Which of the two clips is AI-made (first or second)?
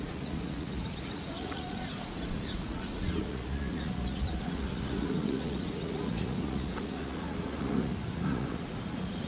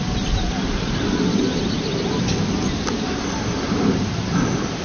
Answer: first